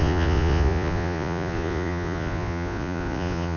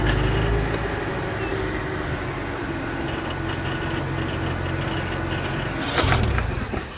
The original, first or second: second